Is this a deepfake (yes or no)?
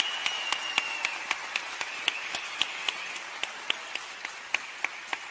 no